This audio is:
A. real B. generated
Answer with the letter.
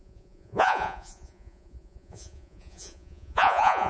B